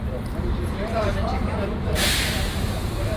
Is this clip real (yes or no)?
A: no